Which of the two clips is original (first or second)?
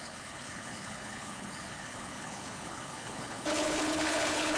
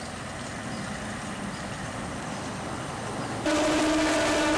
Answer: second